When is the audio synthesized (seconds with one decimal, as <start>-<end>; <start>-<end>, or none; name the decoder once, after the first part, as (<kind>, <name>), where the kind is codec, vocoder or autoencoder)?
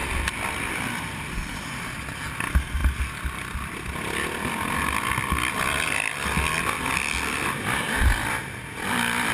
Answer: none